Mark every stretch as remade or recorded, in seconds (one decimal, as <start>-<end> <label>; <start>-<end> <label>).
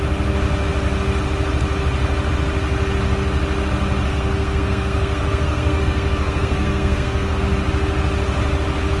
0.0-4.1 recorded; 4.1-7.4 remade; 7.4-9.0 recorded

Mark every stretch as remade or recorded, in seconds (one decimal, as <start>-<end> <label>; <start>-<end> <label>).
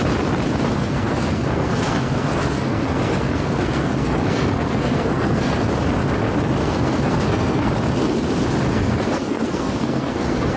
0.0-0.8 recorded; 0.8-5.6 remade; 5.6-6.6 recorded; 6.6-7.7 remade; 7.7-8.7 recorded; 8.7-10.6 remade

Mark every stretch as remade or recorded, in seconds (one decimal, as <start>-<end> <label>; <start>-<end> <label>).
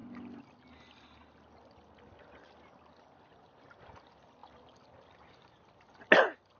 0.0-6.6 recorded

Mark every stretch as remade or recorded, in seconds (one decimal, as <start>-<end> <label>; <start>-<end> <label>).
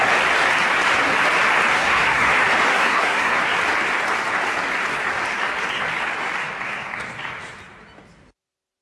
0.0-1.7 recorded; 1.7-2.3 remade; 2.3-2.7 recorded; 2.7-3.4 remade; 3.4-8.8 recorded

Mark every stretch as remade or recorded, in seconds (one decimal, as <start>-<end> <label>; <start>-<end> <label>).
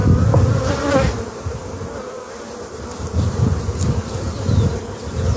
0.0-5.4 recorded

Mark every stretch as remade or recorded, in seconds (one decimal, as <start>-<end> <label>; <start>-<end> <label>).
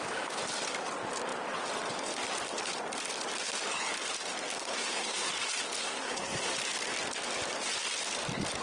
0.0-4.6 recorded; 4.6-5.3 remade; 5.3-5.8 recorded; 5.8-6.5 remade; 6.5-8.6 recorded